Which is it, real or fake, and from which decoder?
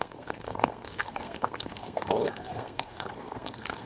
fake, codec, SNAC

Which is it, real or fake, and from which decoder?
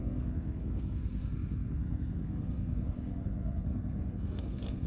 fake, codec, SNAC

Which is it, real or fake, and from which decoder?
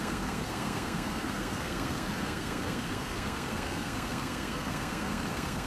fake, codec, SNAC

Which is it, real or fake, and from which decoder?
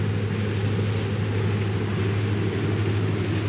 real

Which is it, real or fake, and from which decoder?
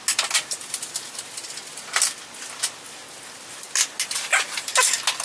real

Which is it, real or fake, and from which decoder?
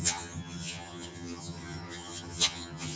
fake, vocoder, HiFi-GAN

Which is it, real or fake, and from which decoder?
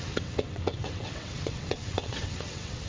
fake, vocoder, WaveNeXt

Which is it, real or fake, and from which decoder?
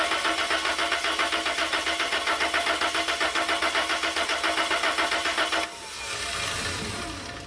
real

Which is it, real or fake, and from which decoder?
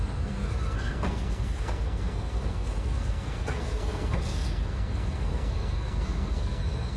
fake, codec, SNAC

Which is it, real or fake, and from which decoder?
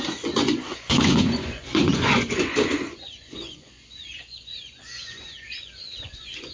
fake, vocoder, Vocos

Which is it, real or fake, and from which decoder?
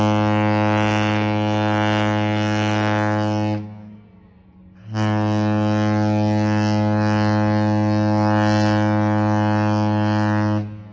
real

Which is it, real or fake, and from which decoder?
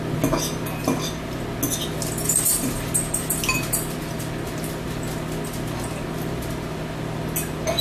real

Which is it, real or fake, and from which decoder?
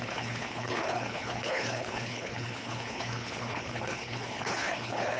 fake, codec, HILCodec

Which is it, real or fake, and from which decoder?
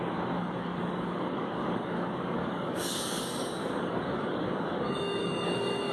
fake, codec, DAC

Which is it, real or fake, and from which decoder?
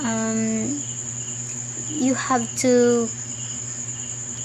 real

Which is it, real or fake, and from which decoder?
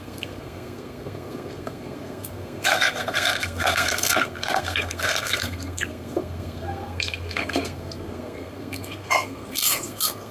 fake, codec, SNAC